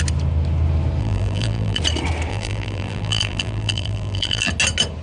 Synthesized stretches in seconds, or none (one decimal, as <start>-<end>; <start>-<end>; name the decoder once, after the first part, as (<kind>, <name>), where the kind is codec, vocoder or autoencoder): 1.0-1.8 (vocoder, BigVGAN v2); 2.3-4.5